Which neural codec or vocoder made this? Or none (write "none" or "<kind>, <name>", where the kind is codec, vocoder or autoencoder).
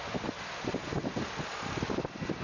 none